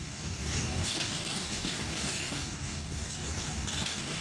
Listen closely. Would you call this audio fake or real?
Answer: fake